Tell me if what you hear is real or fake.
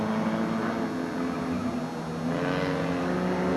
real